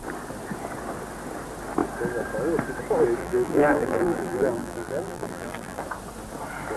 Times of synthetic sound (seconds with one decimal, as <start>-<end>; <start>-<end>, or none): 3.2-5.8